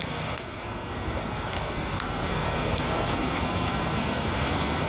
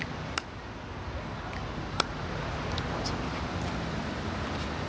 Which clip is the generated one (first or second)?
first